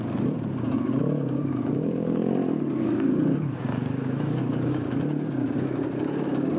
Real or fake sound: fake